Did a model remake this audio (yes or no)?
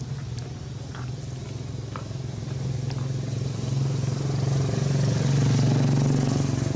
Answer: no